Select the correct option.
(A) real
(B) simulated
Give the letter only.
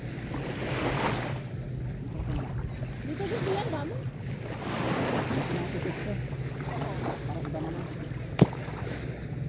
A